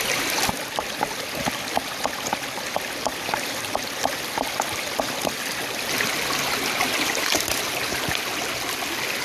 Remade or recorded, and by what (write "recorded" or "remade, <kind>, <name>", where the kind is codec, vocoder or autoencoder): recorded